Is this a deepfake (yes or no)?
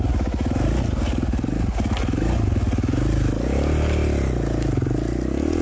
no